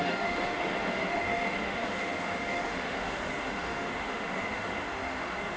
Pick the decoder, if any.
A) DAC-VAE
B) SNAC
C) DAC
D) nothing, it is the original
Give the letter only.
A